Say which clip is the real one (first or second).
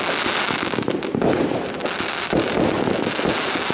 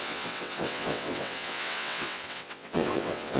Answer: first